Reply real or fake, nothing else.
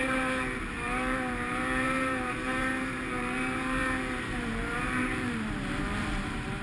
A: fake